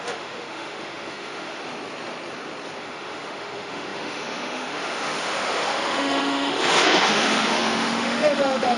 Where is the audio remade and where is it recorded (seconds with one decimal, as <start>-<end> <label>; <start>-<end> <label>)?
0.0-1.6 remade; 1.6-2.8 recorded; 2.8-8.8 remade